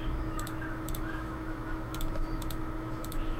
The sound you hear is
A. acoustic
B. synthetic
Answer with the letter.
B